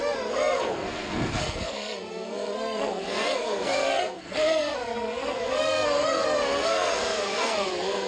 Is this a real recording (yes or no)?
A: no